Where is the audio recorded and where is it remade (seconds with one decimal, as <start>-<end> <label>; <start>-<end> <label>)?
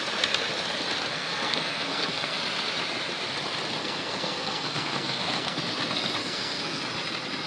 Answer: 0.0-1.1 recorded; 1.1-2.4 remade; 2.4-3.8 recorded; 3.8-5.6 remade; 5.6-6.2 recorded; 6.2-6.8 remade; 6.8-7.5 recorded